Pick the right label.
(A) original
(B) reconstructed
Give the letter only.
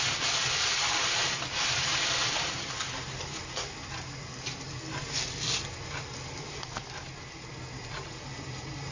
A